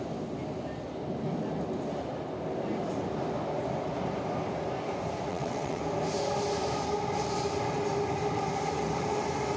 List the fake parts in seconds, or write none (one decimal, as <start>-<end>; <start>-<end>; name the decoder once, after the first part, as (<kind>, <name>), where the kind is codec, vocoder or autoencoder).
5.3-5.8 (vocoder, WaveNeXt)

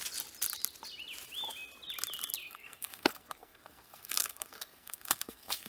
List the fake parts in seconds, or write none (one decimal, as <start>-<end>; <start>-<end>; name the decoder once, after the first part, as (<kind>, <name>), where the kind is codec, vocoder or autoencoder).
2.4-5.7 (codec, SNAC)

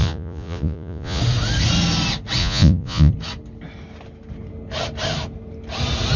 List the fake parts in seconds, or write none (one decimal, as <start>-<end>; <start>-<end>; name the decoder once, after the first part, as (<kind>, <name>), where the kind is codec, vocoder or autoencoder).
0.0-1.2 (vocoder, Vocos); 2.4-3.1

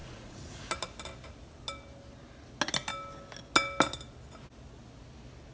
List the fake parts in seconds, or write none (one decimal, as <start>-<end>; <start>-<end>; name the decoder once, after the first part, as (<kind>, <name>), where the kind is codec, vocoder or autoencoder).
0.0-0.7 (vocoder, Vocos)

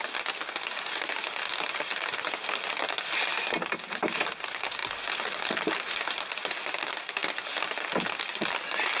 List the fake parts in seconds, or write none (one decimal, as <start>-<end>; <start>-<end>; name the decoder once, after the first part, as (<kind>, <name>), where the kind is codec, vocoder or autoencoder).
none

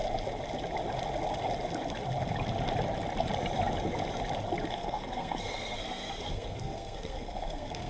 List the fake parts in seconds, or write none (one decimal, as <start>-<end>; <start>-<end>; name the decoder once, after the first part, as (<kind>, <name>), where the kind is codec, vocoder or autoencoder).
4.7-7.9 (codec, SNAC)

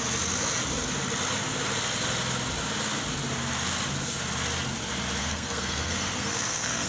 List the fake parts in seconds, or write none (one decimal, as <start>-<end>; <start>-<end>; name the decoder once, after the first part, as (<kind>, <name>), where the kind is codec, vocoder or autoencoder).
5.2-6.9 (codec, SNAC)